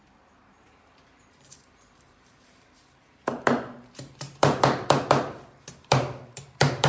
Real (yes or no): no